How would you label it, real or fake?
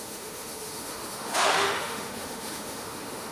fake